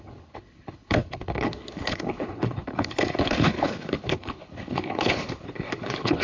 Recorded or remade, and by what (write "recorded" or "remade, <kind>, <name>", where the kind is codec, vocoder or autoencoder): remade, codec, HILCodec